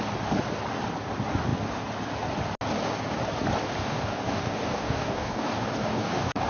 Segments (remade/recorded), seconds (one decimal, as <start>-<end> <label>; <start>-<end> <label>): 0.0-3.8 recorded; 3.8-6.5 remade

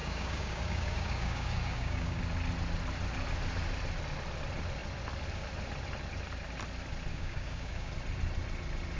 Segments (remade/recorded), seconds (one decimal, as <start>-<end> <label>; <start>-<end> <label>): 0.0-2.2 remade; 2.2-7.1 recorded; 7.1-7.9 remade; 7.9-9.0 recorded